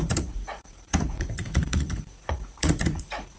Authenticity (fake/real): fake